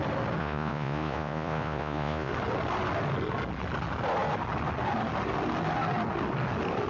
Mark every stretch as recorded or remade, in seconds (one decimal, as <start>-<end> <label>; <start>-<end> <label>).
0.0-0.4 recorded; 0.4-2.3 remade; 2.3-6.9 recorded